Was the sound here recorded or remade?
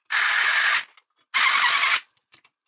recorded